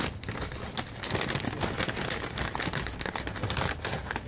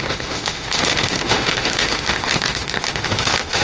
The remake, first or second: second